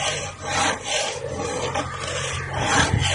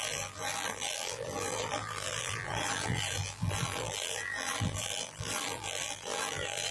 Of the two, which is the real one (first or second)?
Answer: first